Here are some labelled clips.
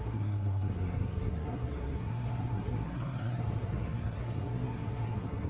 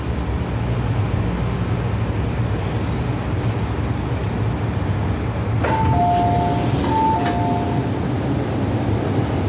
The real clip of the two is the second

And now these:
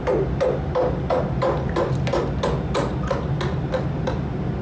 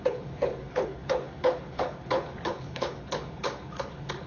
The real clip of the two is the first